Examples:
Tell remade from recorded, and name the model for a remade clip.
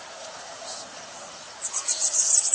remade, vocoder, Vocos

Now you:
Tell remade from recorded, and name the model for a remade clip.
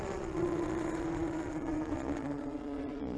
remade, vocoder, Vocos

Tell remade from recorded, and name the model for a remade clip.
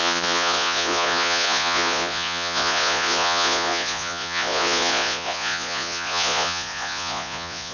remade, vocoder, Vocos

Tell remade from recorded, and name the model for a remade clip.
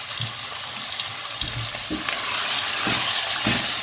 recorded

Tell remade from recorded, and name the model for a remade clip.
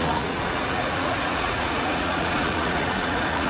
remade, vocoder, Vocos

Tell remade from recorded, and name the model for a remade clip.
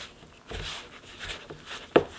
recorded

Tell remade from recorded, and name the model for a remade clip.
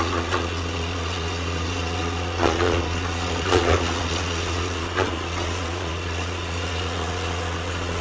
remade, vocoder, Vocos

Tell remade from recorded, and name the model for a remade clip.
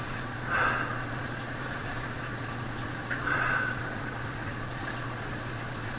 remade, vocoder, Vocos